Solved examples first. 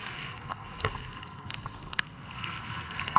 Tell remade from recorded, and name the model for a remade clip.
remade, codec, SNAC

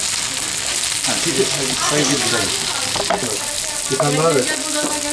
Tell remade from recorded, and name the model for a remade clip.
recorded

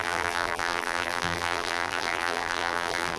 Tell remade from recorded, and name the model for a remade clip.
remade, vocoder, BigVGAN v2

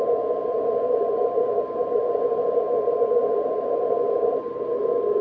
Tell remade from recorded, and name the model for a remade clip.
remade, vocoder, BigVGAN v2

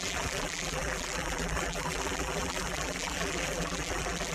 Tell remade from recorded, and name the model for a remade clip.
remade, vocoder, BigVGAN v2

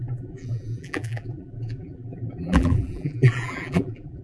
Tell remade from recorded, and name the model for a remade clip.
remade, vocoder, BigVGAN v2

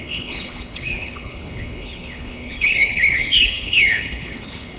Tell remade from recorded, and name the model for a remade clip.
remade, codec, HILCodec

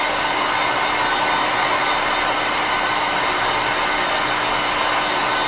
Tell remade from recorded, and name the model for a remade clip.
recorded